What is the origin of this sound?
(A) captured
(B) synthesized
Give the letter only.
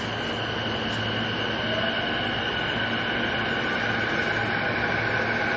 A